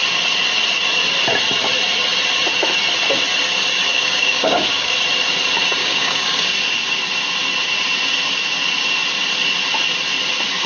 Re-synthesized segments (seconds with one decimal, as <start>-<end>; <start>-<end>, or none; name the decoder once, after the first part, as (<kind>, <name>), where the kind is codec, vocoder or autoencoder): 3.9-4.9 (codec, DAC); 5.8-6.5